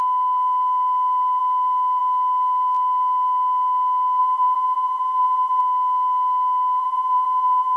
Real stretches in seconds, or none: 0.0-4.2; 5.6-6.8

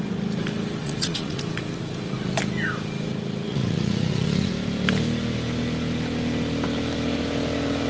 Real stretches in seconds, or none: 0.0-0.8; 1.4-3.5; 4.5-7.9

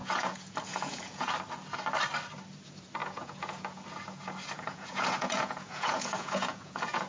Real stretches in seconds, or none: 1.3-3.0